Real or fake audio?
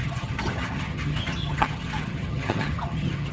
fake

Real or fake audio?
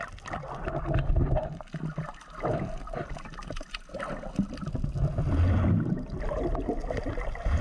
real